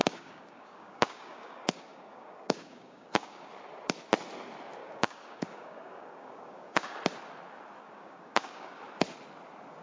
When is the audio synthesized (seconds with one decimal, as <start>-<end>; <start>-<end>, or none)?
0.0-3.5; 4.8-7.0; 7.8-8.8

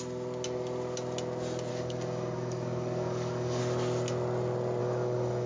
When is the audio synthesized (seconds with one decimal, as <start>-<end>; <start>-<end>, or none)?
1.7-3.6; 4.8-5.5

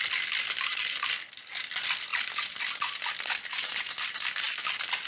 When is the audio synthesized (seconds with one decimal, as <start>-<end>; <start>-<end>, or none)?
none